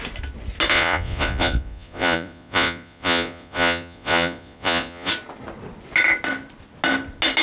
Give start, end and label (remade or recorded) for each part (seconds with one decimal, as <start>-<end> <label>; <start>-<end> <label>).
0.0-0.7 recorded; 0.7-5.1 remade; 5.1-7.4 recorded